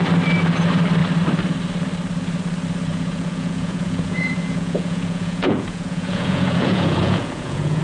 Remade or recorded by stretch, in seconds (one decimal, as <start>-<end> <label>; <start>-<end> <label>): 0.0-2.9 recorded; 2.9-7.8 remade